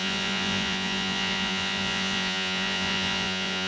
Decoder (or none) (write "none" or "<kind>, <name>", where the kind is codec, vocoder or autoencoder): vocoder, Vocos